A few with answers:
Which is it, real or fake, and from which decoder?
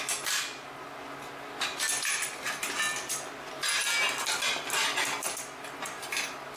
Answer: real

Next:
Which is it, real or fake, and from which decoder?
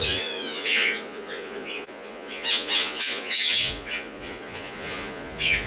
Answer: fake, vocoder, Vocos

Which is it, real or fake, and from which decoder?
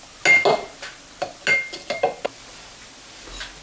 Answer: real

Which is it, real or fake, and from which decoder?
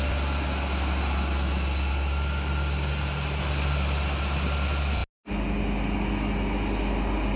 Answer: real